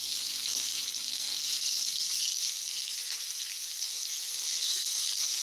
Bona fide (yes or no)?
no